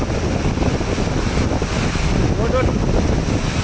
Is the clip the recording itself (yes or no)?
yes